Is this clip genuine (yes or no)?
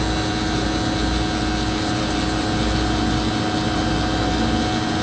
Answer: yes